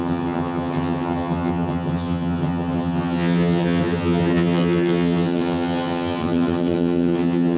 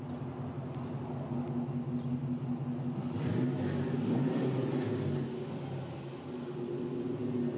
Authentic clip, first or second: second